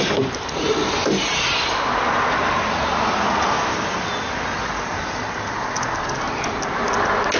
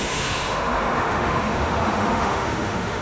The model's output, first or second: second